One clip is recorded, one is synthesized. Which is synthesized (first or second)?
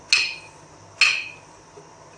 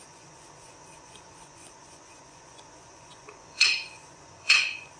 second